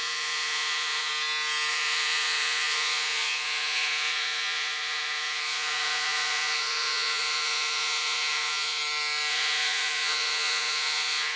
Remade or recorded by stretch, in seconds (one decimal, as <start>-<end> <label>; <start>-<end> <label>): 0.0-1.1 remade; 1.1-1.7 recorded; 1.7-8.8 remade; 8.8-9.3 recorded; 9.3-11.4 remade